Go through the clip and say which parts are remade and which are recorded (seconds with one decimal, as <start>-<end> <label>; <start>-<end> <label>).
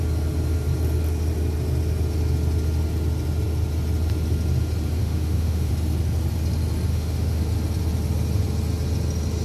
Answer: 0.0-5.0 recorded; 5.0-5.7 remade; 5.7-6.9 recorded; 6.9-7.4 remade; 7.4-9.4 recorded